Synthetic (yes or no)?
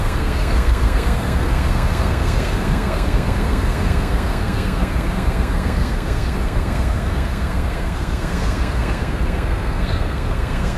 yes